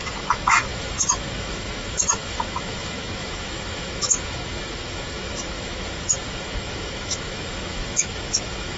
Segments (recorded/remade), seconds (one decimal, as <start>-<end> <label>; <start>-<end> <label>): 0.0-8.8 remade